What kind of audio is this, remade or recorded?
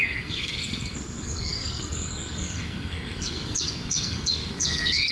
remade